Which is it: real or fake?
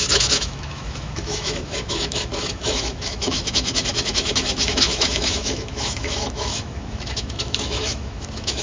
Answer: fake